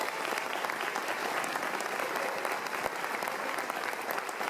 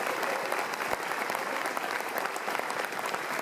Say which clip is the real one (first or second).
first